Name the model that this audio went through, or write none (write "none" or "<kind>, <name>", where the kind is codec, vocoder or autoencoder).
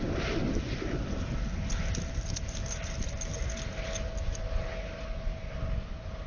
none